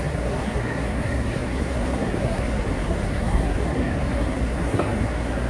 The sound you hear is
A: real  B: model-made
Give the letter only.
B